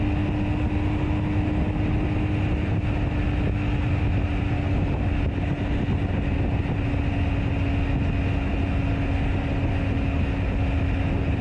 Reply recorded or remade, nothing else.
recorded